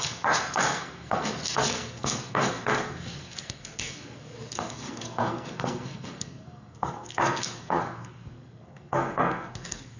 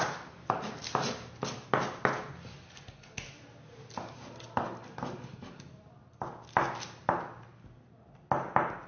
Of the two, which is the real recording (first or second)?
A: second